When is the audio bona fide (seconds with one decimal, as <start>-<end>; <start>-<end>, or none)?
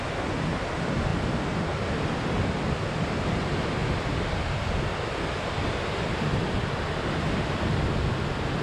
0.0-8.6